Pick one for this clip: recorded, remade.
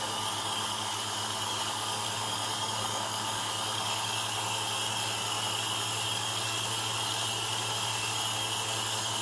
remade